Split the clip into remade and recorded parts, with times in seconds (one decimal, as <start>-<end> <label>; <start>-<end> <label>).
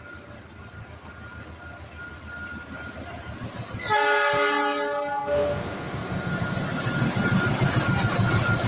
0.0-8.7 recorded